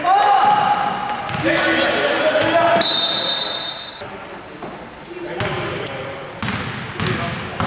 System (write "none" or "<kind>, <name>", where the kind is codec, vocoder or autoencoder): none